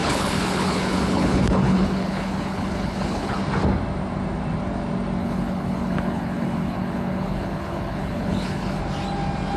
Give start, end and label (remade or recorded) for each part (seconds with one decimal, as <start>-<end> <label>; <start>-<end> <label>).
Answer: 0.0-3.4 remade; 3.4-5.2 recorded; 5.2-8.8 remade; 8.8-9.6 recorded